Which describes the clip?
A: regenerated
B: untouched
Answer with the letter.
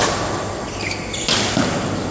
B